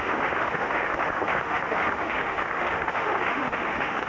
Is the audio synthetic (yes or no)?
yes